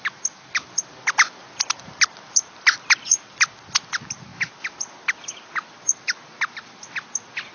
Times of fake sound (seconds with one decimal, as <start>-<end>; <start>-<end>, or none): none